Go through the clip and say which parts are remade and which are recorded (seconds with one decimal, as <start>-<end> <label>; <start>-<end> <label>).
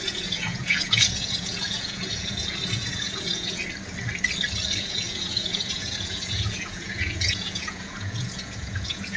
0.0-3.6 remade; 3.6-4.8 recorded; 4.8-9.2 remade